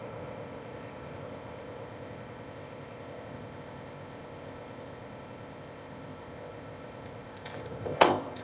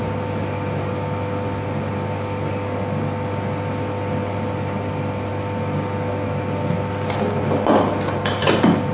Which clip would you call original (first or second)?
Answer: second